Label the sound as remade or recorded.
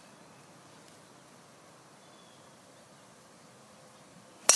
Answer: recorded